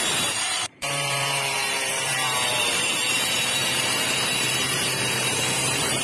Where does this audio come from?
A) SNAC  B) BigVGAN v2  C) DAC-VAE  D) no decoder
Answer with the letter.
B